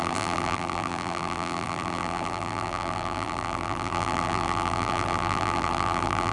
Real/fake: fake